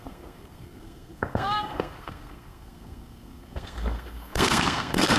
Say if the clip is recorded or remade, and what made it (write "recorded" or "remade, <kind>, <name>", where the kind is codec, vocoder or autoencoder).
remade, codec, SNAC